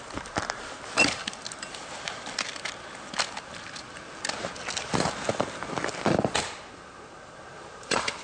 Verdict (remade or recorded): recorded